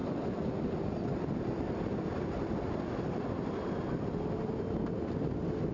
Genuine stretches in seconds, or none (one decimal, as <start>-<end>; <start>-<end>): 0.0-5.7